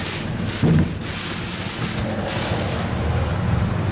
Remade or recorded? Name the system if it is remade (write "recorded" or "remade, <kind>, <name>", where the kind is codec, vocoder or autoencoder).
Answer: recorded